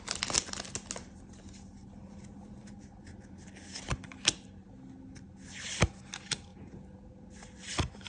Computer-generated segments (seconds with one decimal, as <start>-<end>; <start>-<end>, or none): none